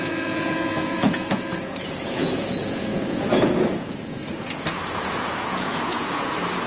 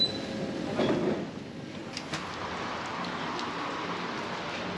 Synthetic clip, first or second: first